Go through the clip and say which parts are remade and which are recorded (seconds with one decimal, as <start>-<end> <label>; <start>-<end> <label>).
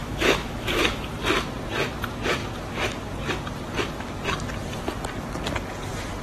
0.0-1.2 remade; 1.2-6.2 recorded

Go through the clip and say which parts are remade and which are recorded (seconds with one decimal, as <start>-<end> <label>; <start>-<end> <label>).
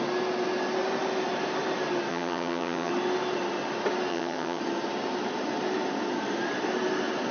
0.0-2.1 recorded; 2.1-2.9 remade; 2.9-4.1 recorded; 4.1-4.6 remade; 4.6-7.3 recorded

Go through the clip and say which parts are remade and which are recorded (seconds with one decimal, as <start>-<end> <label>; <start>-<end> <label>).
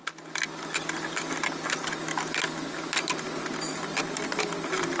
0.0-5.0 recorded